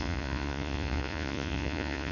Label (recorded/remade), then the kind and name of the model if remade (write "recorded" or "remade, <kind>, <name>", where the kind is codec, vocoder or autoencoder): remade, vocoder, Vocos